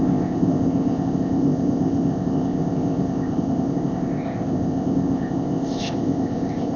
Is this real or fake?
fake